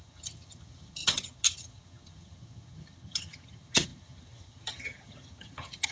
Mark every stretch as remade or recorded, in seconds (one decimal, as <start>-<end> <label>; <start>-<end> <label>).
0.0-5.9 remade